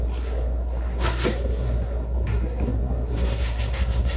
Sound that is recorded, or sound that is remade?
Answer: remade